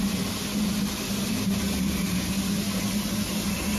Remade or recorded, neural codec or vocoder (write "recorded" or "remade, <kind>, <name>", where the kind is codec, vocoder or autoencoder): recorded